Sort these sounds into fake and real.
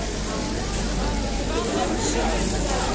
real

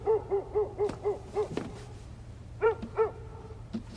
fake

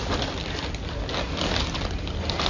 real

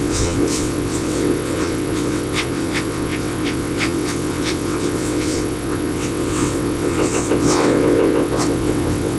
fake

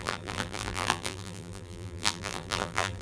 fake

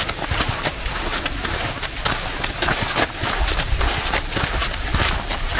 real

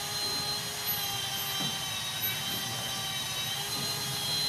real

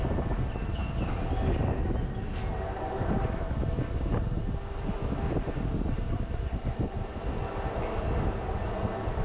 real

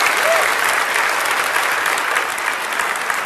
real